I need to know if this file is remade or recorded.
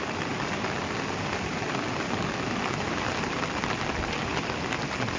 recorded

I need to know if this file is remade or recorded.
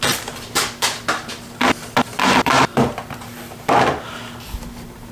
remade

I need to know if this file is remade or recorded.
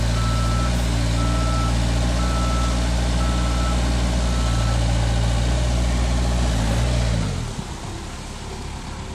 recorded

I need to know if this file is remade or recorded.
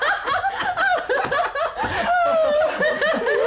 recorded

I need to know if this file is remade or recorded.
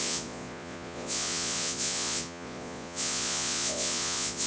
remade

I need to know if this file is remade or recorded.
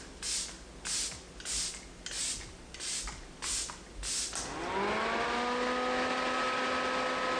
recorded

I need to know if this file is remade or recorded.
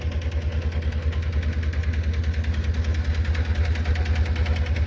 recorded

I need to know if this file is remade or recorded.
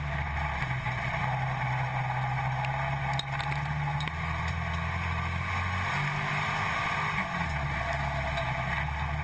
recorded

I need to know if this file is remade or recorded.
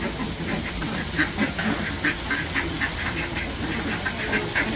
recorded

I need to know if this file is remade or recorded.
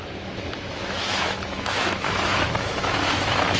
remade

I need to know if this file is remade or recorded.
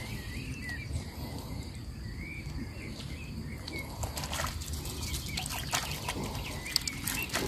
recorded